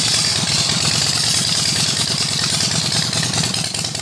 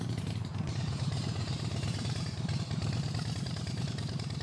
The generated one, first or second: second